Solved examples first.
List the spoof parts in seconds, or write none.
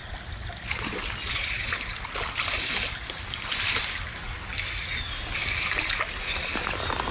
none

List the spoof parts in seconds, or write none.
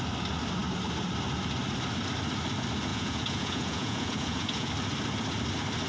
2.9-4.7 (vocoder, Vocos)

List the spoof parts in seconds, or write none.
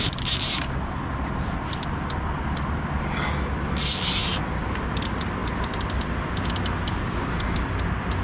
none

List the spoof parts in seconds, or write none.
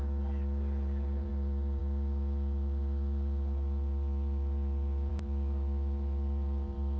0.0-7.0 (vocoder, BigVGAN v2)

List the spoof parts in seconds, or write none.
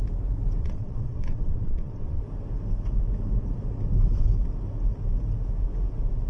0.6-2.2 (vocoder, WaveNeXt)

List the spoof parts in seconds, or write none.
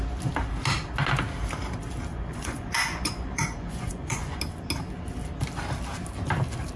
2.1-4.4 (vocoder, Vocos)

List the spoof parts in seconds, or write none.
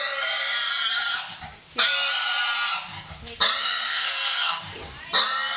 3.6-4.6 (codec, SNAC)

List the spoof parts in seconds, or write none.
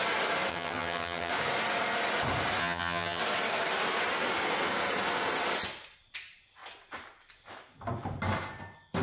0.5-1.3 (vocoder, HiFi-GAN); 2.6-3.2